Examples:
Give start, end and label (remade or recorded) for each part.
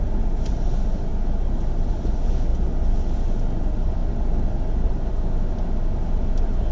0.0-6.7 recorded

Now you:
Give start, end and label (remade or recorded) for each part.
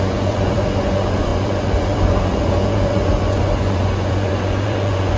0.0-5.2 remade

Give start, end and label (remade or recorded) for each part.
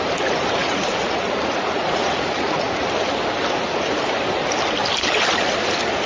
0.0-0.6 recorded; 0.6-2.8 remade; 2.8-6.1 recorded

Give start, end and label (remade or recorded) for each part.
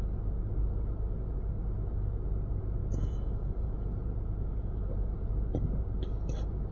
0.0-2.8 recorded; 2.8-5.3 remade; 5.3-6.7 recorded